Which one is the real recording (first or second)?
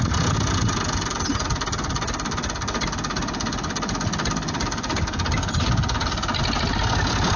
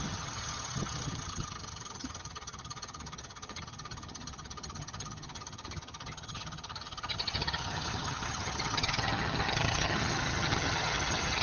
first